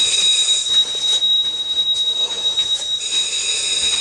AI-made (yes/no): no